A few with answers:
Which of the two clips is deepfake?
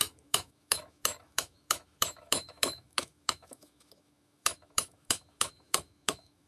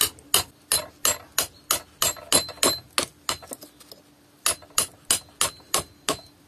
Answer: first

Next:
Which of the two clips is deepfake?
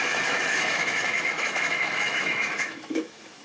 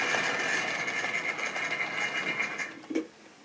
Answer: first